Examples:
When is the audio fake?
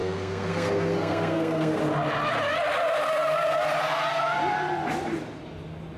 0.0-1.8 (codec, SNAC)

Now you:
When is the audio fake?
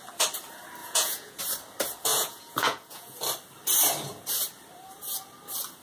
0.8-1.4 (vocoder, Vocos); 2.1-3.2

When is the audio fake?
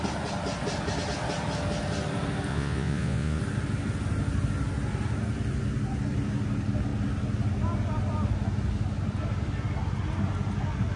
2.5-3.4 (vocoder, Vocos)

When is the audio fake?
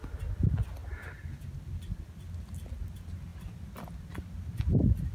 none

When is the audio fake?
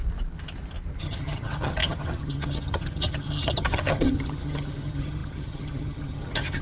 1.0-6.6 (vocoder, HiFi-GAN)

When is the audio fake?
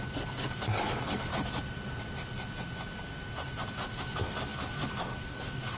0.0-1.3 (codec, DAC); 4.0-5.8